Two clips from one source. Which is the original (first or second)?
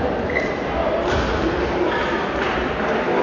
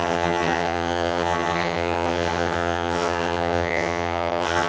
first